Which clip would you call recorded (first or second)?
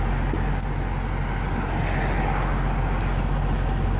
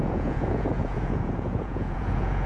first